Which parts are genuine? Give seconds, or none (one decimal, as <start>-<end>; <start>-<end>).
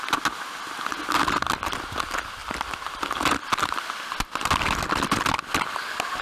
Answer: 0.0-6.2